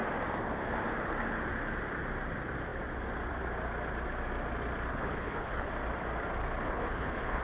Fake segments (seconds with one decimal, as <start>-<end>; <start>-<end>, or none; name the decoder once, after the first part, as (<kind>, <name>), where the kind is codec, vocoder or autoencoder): 4.9-5.7 (codec, HILCodec); 6.6-7.4